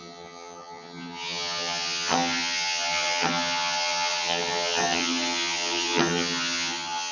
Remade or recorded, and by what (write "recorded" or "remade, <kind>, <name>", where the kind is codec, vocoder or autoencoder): remade, vocoder, HiFi-GAN